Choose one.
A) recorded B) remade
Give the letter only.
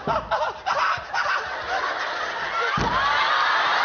A